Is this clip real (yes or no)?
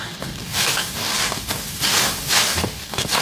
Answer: no